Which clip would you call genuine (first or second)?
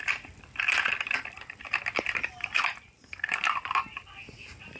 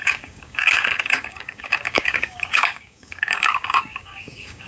first